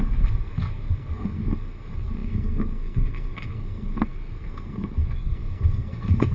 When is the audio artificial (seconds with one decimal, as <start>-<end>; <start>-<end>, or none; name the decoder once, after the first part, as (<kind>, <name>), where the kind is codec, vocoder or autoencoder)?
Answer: 0.0-6.3 (codec, SNAC)